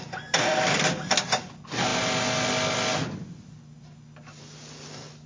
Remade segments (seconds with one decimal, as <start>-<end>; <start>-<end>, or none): none